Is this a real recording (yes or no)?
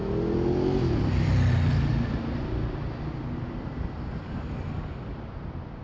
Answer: yes